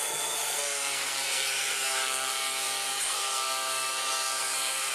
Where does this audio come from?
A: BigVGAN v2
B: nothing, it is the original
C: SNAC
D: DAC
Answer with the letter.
C